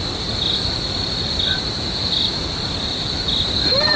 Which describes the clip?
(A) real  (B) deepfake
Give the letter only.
B